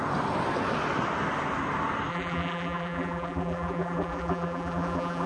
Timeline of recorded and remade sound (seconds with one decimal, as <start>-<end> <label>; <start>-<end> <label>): 0.0-2.1 recorded; 2.1-5.3 remade